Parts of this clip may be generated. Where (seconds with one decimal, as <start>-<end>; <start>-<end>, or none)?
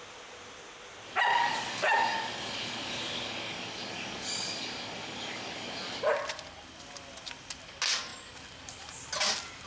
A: 1.3-6.0